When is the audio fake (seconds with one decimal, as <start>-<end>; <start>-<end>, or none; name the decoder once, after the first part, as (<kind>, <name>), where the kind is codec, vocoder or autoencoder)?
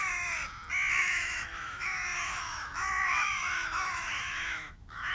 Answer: 0.0-0.4 (autoencoder, DAC-VAE); 1.0-5.1